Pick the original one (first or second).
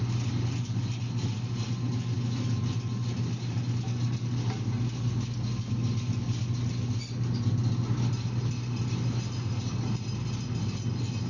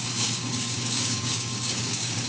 first